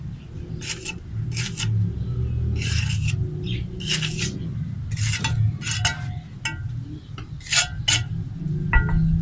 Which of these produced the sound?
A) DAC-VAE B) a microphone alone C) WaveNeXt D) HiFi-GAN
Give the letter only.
B